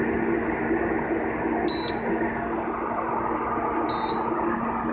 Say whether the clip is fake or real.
real